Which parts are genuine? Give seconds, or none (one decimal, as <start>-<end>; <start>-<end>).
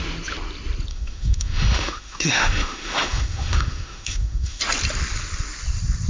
0.0-0.9; 4.6-6.1